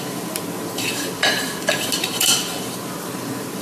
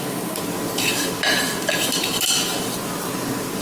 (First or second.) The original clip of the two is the second